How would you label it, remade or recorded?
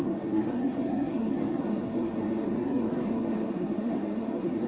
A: remade